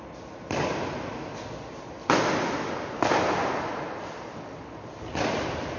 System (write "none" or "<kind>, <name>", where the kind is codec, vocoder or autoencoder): none